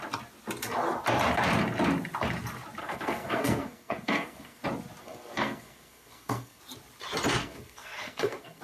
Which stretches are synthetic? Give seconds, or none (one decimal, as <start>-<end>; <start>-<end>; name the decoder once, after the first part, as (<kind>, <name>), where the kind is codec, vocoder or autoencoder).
2.8-4.6 (codec, SNAC); 5.0-6.6; 7.4-8.6